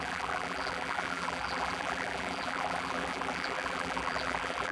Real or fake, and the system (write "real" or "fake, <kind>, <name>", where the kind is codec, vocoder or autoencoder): fake, vocoder, BigVGAN v2